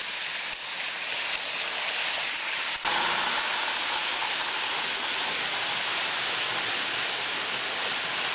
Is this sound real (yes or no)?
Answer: yes